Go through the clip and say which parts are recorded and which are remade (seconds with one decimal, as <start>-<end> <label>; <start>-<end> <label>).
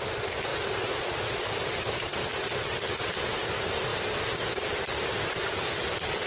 0.0-6.3 recorded